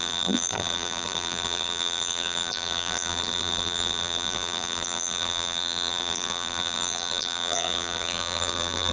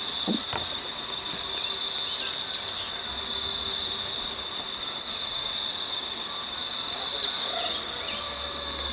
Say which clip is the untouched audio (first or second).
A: second